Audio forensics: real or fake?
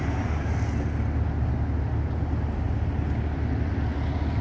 real